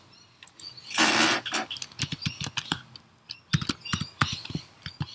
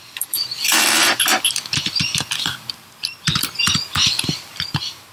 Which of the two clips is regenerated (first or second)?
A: second